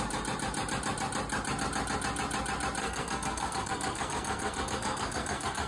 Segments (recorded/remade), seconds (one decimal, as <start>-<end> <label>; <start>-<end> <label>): 0.0-2.8 recorded; 2.8-5.7 remade